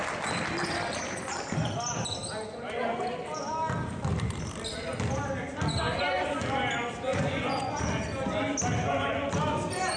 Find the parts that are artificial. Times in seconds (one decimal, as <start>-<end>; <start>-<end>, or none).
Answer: 7.1-7.8